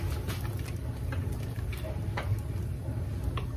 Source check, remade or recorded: recorded